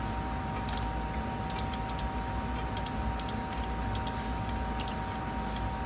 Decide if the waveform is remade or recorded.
recorded